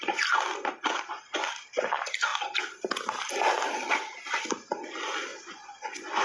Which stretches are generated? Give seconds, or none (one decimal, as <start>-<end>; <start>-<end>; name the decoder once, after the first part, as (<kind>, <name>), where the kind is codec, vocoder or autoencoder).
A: 5.3-6.2 (vocoder, Vocos)